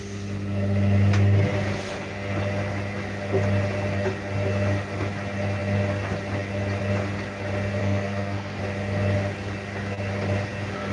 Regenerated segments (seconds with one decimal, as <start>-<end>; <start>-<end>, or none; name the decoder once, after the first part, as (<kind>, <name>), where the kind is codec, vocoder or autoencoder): 7.8-8.6 (codec, SNAC)